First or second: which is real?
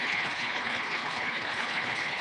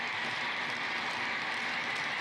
second